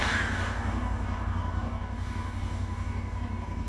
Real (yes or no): no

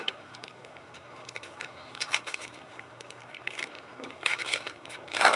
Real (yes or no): no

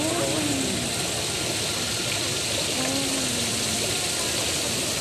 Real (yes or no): yes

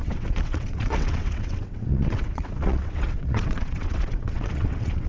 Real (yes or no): no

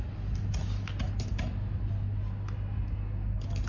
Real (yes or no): yes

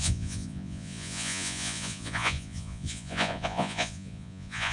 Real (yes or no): no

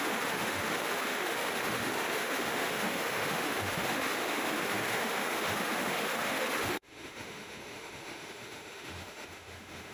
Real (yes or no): no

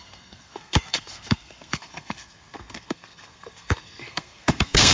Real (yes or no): no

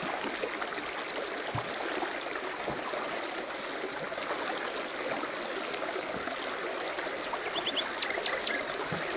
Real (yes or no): yes